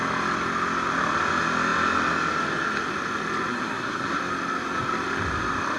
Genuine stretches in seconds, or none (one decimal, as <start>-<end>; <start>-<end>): 0.0-3.5; 4.2-5.8